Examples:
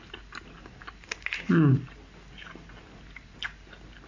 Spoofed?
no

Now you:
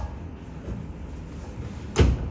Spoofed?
no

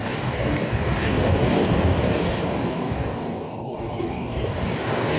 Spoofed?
yes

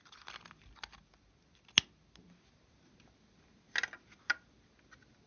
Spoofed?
no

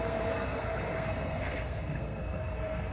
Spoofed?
yes